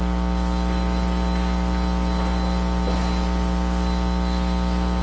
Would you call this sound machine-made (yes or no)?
no